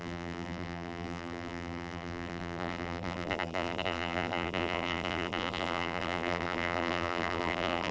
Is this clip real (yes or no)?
no